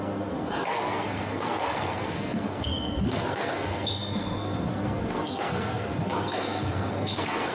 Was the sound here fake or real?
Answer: fake